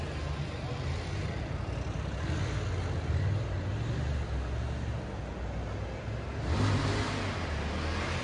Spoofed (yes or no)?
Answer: no